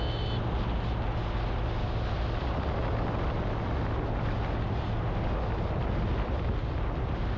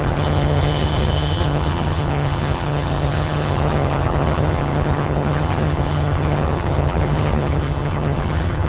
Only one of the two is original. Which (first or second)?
first